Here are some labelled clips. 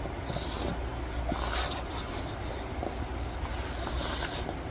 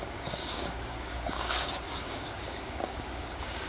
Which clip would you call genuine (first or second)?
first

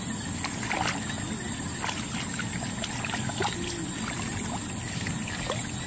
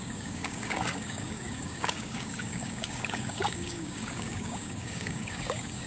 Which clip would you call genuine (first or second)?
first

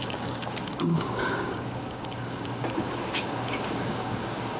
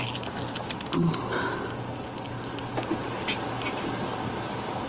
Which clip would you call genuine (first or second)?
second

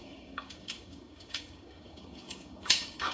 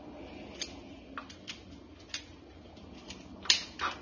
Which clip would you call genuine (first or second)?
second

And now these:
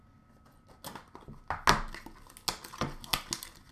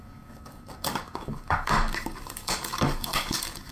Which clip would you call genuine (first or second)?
first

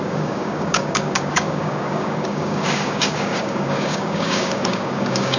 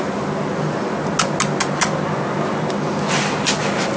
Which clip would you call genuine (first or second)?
second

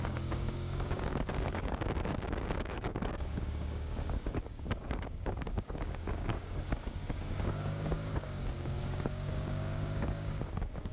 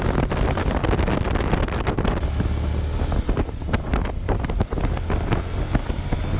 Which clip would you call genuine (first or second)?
second